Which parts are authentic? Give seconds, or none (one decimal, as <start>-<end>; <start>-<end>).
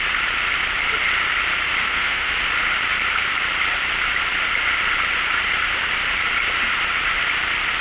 0.0-1.8; 2.3-7.8